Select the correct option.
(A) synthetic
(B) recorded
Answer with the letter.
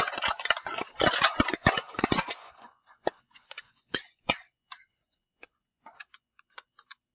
A